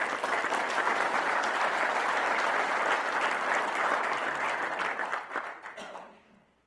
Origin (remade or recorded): remade